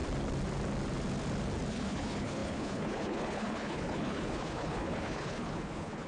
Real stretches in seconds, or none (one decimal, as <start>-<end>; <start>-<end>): 0.0-1.7